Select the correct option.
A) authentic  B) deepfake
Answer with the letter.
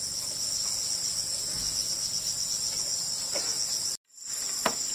A